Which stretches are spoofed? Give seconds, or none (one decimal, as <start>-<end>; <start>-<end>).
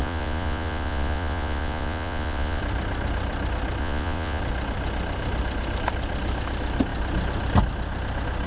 0.0-2.6; 3.8-4.4